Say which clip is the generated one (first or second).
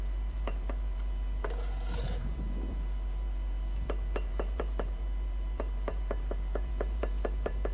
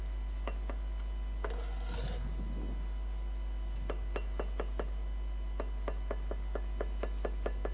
first